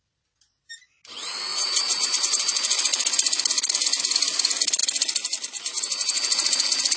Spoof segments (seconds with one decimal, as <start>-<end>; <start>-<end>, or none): 1.5-2.4